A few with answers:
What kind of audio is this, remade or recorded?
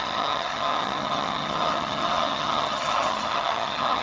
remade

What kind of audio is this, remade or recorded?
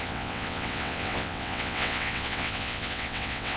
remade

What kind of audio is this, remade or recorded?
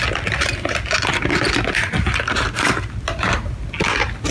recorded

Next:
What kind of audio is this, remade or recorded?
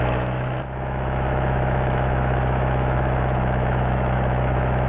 remade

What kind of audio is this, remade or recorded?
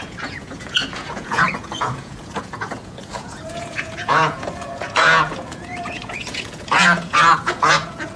remade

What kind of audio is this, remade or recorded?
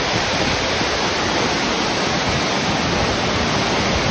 recorded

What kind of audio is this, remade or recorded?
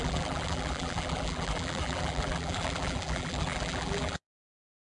remade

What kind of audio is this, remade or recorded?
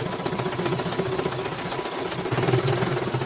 recorded